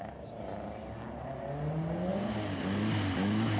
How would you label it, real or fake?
real